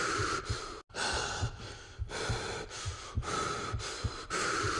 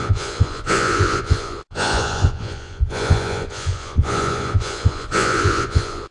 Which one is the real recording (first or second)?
first